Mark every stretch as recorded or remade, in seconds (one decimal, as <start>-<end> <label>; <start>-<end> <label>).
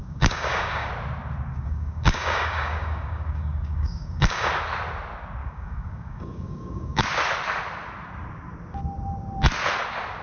0.0-0.9 remade; 0.9-1.5 recorded; 1.5-4.5 remade; 4.5-5.4 recorded; 5.4-7.0 remade; 7.0-10.2 recorded